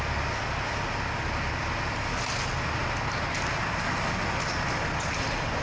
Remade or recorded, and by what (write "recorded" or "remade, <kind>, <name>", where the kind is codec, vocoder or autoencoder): recorded